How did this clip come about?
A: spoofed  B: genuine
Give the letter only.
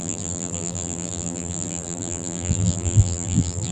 A